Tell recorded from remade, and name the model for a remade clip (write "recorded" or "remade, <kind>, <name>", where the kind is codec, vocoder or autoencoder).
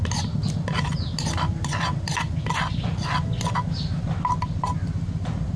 recorded